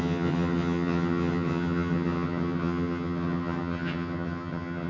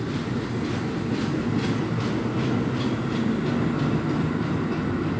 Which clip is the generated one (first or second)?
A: first